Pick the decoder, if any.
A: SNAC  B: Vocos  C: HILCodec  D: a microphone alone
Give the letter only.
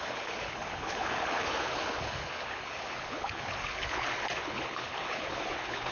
C